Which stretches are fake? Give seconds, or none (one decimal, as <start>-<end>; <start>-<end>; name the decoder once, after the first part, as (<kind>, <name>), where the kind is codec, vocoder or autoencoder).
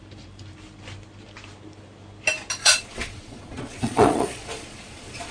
2.6-5.3 (vocoder, Vocos)